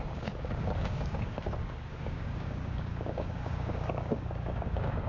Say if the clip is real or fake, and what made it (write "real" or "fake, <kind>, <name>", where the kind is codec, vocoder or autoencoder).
fake, codec, DAC